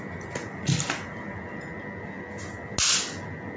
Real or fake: real